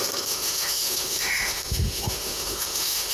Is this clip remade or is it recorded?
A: remade